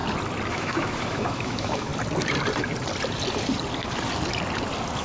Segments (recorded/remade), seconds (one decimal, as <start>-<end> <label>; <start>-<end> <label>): 0.0-0.5 recorded; 0.5-1.9 remade; 1.9-5.0 recorded